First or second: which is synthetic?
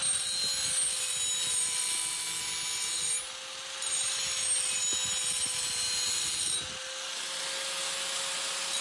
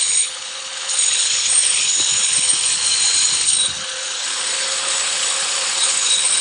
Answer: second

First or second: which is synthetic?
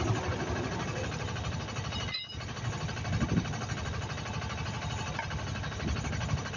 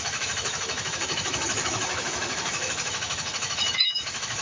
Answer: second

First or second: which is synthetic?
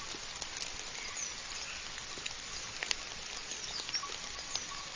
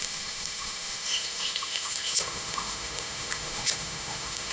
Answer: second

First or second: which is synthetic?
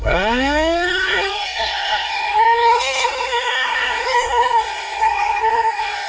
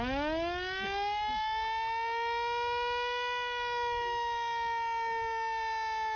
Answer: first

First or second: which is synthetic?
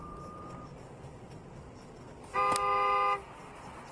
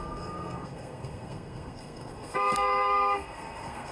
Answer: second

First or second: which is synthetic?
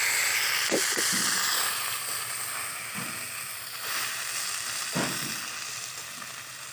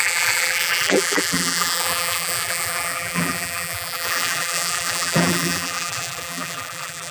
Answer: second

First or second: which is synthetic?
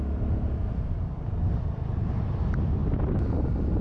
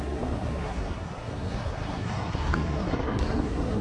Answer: second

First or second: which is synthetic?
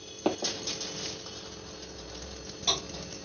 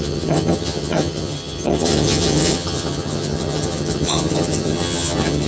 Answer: second